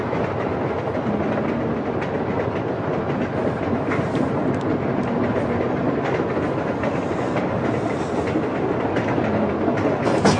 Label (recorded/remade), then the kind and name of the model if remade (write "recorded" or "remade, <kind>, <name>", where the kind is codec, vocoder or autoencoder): recorded